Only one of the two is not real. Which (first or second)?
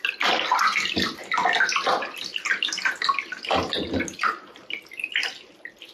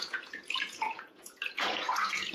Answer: second